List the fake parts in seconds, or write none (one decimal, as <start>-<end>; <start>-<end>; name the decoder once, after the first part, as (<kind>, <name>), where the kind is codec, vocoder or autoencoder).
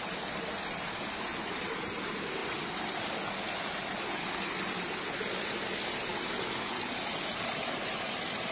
none